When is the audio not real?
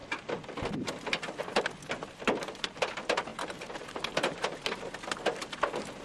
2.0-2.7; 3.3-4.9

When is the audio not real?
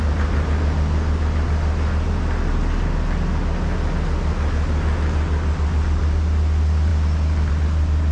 none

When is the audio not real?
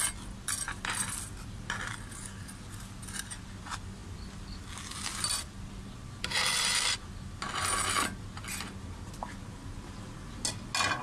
none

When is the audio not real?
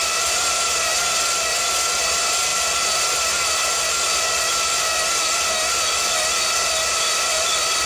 0.0-0.9; 2.0-2.5; 6.3-7.9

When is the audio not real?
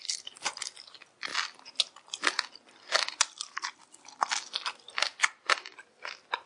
0.0-1.3; 5.2-6.5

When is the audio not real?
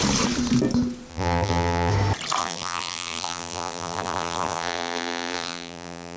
1.1-1.9; 2.4-6.2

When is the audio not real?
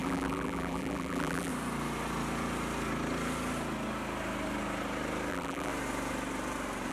0.0-1.5; 5.3-5.7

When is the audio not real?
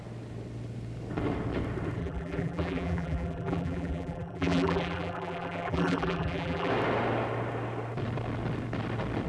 2.0-6.7